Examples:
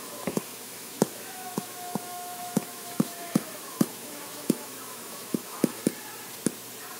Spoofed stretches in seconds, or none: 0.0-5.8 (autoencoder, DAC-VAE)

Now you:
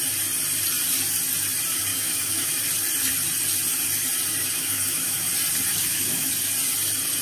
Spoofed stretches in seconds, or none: 1.9-2.6 (autoencoder, DAC-VAE); 4.4-5.3; 5.7-6.3

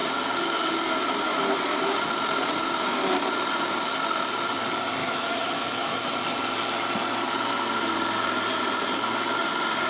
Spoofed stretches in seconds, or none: 5.0-6.1 (autoencoder, DAC-VAE)

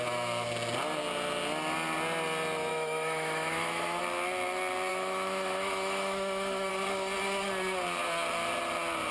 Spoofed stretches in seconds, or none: 2.7-4.0 (autoencoder, DAC-VAE); 4.9-6.7

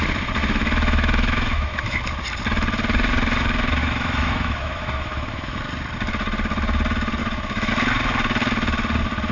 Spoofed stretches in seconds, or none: 0.4-2.0 (autoencoder, DAC-VAE); 3.8-5.6; 7.2-7.7